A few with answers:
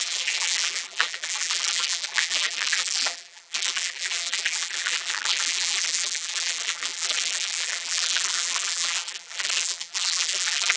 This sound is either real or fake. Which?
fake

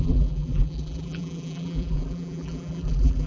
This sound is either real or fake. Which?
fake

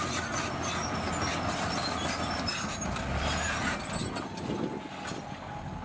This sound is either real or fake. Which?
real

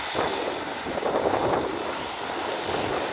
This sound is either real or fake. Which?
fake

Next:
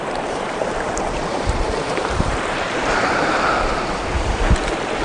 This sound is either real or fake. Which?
fake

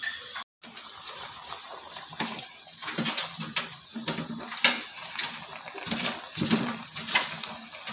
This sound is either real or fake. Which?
real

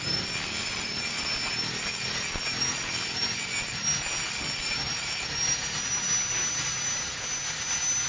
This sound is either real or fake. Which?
real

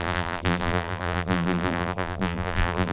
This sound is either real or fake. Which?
fake